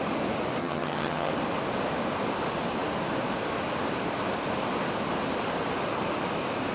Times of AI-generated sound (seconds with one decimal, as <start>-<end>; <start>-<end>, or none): 0.6-1.3